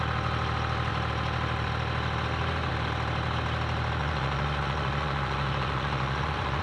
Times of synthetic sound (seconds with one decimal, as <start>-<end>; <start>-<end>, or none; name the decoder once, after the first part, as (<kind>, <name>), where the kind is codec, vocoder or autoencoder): 4.0-6.6 (vocoder, Vocos)

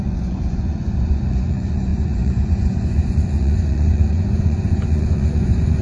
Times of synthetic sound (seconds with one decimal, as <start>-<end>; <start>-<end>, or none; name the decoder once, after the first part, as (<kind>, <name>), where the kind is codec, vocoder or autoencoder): 0.0-5.8 (vocoder, Vocos)

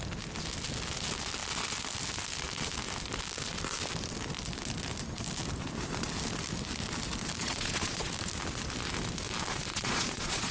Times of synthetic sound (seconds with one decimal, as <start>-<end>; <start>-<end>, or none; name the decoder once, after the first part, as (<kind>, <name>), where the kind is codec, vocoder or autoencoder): 7.4-8.1 (vocoder, Vocos); 9.7-10.5

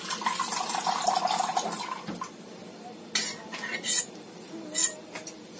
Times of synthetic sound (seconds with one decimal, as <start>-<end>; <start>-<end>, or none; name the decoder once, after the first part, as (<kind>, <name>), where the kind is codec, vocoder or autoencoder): none